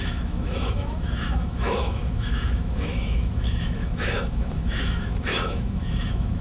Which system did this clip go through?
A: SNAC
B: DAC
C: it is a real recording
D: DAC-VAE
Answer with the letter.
D